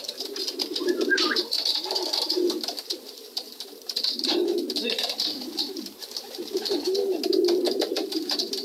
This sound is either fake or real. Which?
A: fake